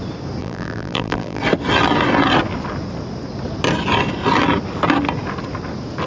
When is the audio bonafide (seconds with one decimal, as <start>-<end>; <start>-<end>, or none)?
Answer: 0.0-0.4; 1.4-6.1